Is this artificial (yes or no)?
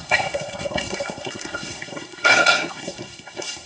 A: yes